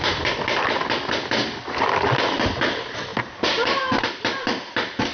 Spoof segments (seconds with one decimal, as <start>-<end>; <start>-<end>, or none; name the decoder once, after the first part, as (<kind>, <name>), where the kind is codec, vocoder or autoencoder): none